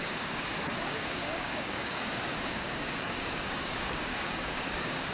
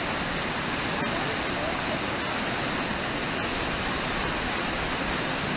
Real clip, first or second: second